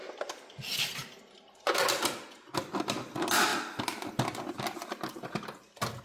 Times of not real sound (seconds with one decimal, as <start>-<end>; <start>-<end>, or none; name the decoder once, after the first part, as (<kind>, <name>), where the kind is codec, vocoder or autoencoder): 0.0-1.3 (vocoder, BigVGAN v2); 2.6-3.1